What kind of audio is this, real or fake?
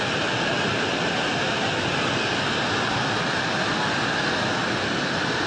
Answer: real